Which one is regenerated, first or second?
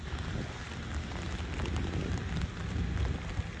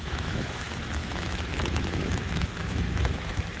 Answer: second